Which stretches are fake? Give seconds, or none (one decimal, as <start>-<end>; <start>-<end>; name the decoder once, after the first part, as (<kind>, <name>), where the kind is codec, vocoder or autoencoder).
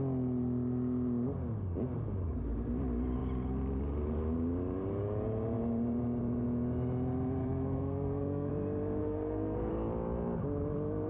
7.4-8.5 (codec, SNAC); 9.0-9.7